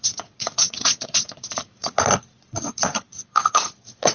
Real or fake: fake